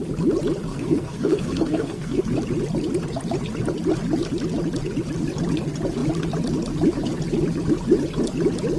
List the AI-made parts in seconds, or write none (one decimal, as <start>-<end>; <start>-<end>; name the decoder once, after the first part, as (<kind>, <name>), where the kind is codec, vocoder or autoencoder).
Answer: 0.7-2.2 (codec, SNAC)